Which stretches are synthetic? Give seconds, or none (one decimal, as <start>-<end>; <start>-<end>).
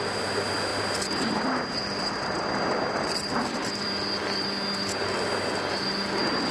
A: 0.0-0.7; 1.8-6.5